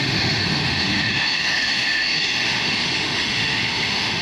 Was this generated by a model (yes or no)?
yes